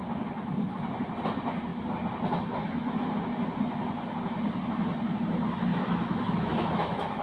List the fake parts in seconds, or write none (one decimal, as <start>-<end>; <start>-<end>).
5.7-7.2